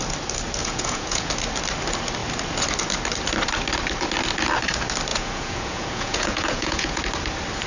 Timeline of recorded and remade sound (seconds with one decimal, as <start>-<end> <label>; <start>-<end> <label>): 0.0-0.6 recorded; 0.6-1.3 remade; 1.3-5.1 recorded; 5.1-7.0 remade; 7.0-7.7 recorded